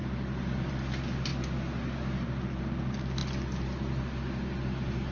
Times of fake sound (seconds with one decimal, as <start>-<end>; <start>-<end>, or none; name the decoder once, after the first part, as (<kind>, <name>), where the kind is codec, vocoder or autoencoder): none